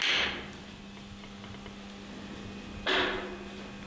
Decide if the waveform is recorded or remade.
recorded